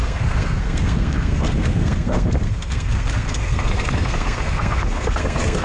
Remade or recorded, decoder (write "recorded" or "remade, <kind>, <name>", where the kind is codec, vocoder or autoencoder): remade, codec, SNAC